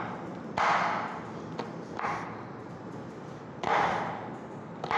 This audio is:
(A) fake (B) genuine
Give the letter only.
B